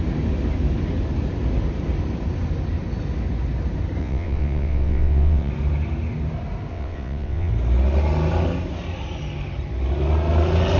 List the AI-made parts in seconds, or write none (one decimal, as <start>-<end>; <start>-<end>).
4.0-5.5; 6.7-7.5